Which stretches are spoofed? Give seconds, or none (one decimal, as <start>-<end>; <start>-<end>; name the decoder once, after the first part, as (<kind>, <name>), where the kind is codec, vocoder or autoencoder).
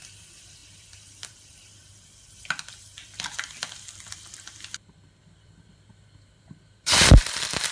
0.0-7.7 (vocoder, BigVGAN v2)